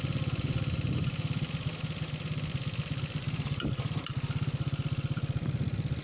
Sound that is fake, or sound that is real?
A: fake